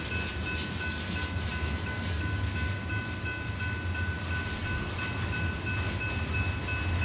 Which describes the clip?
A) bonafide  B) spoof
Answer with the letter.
A